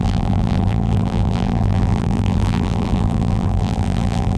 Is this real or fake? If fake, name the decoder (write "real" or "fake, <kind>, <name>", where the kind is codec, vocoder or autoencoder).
fake, vocoder, BigVGAN v2